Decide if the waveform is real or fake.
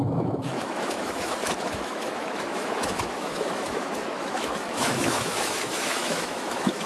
fake